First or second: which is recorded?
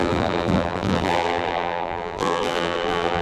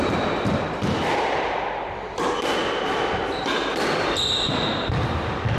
second